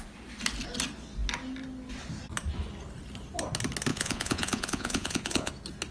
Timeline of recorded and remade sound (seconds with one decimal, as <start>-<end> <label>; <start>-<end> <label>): 0.0-3.9 recorded; 3.9-5.5 remade; 5.5-5.9 recorded